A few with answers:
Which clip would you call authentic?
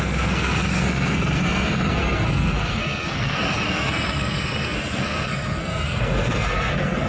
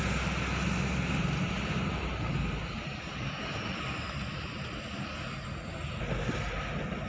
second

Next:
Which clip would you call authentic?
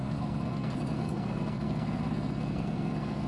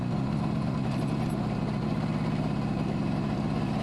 second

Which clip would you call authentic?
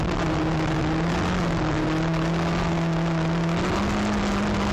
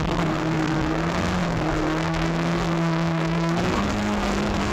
first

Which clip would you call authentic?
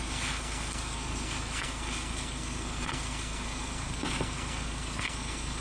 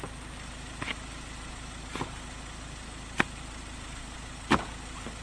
second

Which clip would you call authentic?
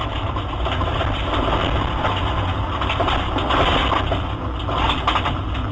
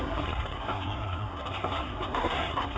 first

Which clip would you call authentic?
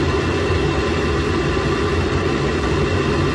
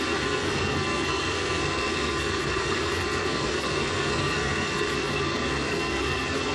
first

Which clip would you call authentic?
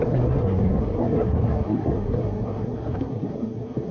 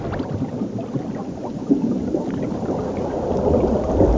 second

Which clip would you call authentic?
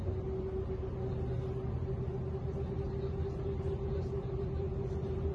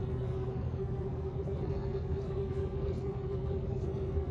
first